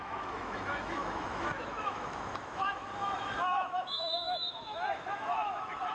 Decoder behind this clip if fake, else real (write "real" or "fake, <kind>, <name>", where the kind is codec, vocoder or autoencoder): fake, autoencoder, DAC-VAE